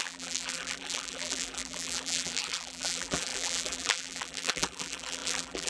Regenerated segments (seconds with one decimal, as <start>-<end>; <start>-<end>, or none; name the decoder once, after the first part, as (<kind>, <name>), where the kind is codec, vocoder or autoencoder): 0.0-5.7 (vocoder, BigVGAN v2)